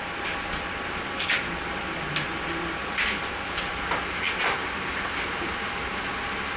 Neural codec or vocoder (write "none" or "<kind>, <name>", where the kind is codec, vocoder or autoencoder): none